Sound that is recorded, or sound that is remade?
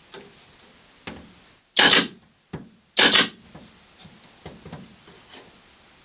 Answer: recorded